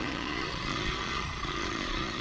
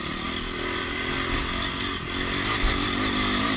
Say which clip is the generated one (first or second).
first